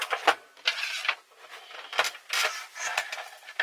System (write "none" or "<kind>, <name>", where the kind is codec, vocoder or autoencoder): none